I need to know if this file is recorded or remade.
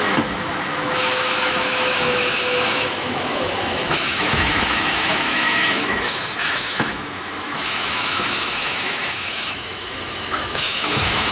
remade